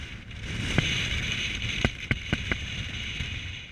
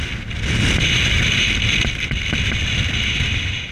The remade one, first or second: first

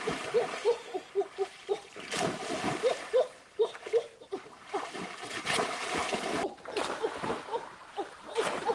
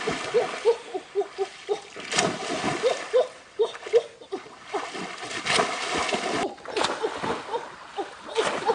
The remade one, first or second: first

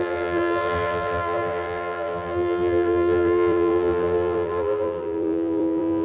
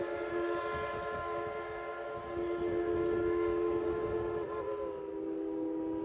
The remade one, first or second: first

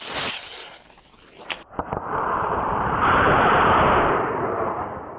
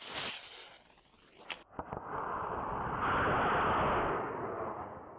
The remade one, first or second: first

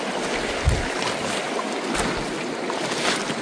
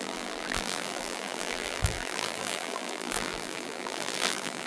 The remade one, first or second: second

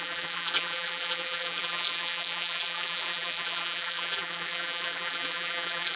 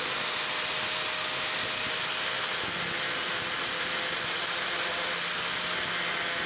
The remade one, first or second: first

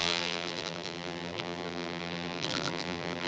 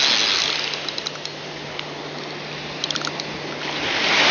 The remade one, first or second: first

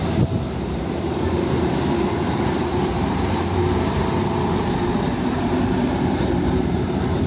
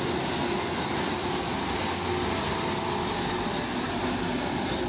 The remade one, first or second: first